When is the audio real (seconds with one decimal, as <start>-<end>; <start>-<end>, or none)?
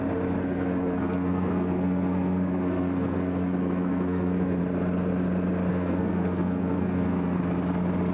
0.0-0.4; 4.6-5.7; 7.4-8.1